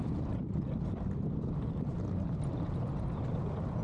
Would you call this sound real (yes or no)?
yes